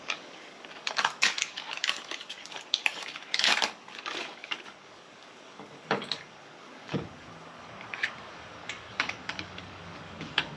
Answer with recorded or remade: remade